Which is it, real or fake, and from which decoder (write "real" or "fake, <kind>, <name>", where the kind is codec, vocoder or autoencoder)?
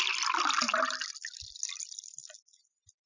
real